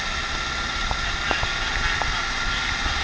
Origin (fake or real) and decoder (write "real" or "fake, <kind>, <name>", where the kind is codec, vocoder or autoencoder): real